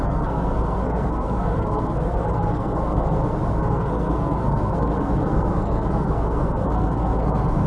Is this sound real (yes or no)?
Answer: no